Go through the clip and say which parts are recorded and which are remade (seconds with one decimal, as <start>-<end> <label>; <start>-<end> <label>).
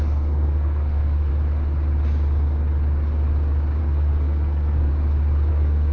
0.0-1.3 remade; 1.3-3.8 recorded; 3.8-4.9 remade; 4.9-5.5 recorded; 5.5-5.9 remade